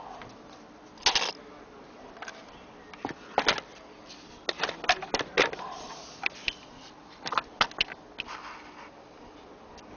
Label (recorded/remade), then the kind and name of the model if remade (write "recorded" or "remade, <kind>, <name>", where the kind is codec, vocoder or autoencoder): recorded